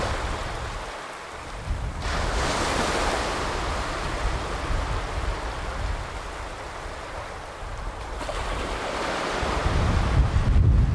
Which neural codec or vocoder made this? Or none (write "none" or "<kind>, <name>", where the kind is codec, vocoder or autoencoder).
none